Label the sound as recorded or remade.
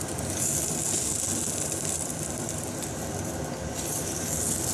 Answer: remade